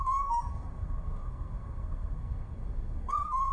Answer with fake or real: fake